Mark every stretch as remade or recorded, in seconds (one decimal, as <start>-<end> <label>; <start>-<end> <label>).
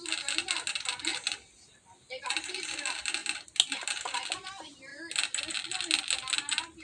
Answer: 0.0-6.8 recorded